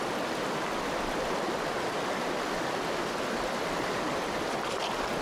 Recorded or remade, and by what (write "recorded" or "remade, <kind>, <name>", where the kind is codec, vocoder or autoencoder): recorded